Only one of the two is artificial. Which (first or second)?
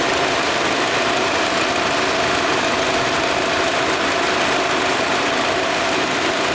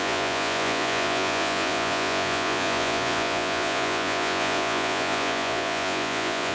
second